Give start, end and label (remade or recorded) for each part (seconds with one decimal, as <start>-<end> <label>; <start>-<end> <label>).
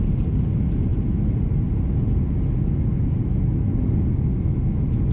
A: 0.0-5.1 recorded